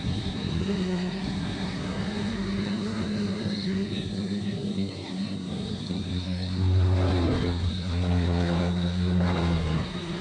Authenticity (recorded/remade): remade